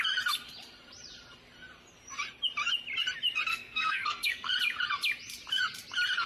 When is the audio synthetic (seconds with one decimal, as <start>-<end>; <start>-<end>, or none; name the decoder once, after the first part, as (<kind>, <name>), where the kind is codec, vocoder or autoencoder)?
3.5-4.5 (codec, SNAC)